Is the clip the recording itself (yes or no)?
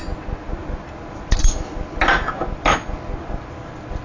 yes